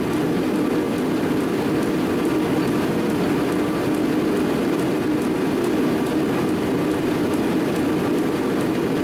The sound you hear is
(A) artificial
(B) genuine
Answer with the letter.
B